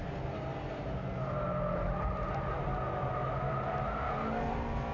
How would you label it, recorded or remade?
recorded